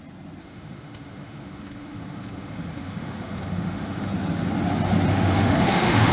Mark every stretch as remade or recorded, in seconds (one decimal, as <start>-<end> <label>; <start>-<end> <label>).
0.0-0.4 recorded; 0.4-4.1 remade; 4.1-5.1 recorded; 5.1-6.1 remade